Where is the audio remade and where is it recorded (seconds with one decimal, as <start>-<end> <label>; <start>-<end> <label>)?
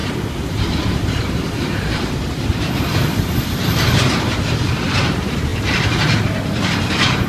0.0-4.4 remade; 4.4-5.5 recorded; 5.5-6.2 remade; 6.2-7.3 recorded